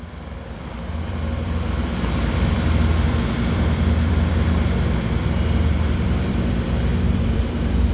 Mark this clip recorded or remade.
remade